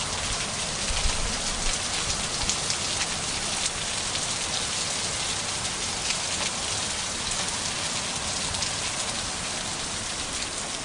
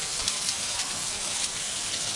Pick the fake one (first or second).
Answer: second